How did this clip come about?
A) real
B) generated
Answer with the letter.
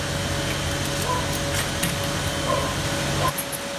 A